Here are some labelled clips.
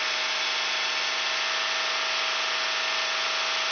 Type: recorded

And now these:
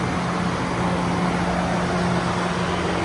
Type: recorded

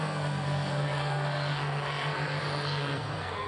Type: remade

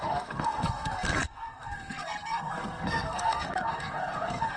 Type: remade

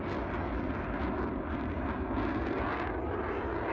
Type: recorded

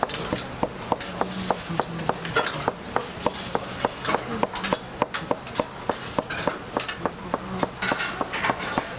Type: recorded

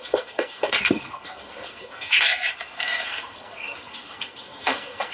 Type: remade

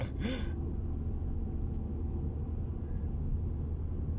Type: recorded